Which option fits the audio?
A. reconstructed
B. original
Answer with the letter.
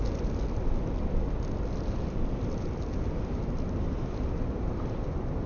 B